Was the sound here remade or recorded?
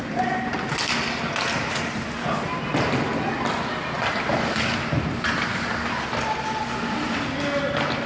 recorded